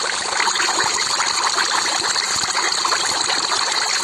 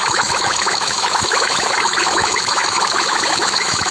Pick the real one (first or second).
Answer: first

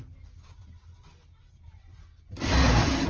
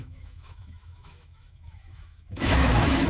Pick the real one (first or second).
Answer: first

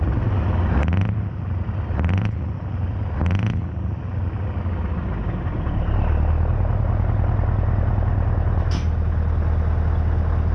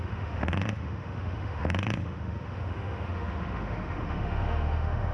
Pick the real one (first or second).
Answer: first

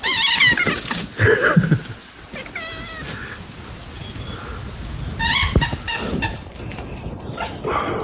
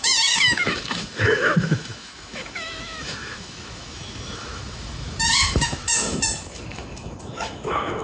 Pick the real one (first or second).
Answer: first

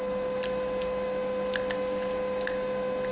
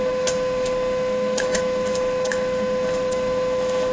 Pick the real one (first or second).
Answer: first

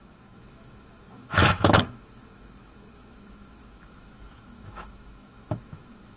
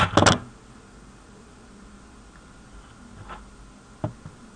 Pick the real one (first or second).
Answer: second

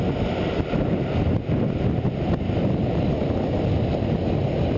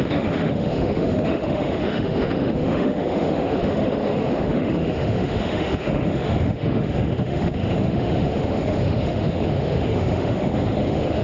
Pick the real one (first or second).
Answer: first